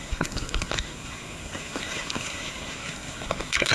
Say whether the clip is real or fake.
fake